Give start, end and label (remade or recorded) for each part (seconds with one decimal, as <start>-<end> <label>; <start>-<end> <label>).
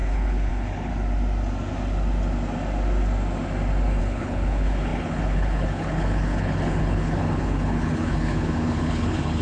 0.0-0.9 remade; 0.9-4.0 recorded; 4.0-9.4 remade